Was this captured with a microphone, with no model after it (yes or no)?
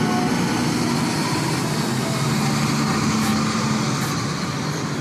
yes